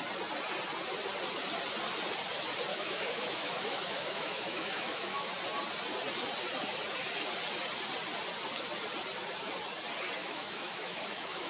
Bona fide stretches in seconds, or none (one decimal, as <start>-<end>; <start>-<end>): 0.0-2.7; 5.3-10.2